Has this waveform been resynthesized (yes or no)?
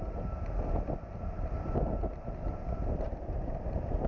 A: no